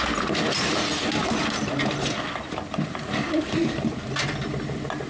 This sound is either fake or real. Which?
real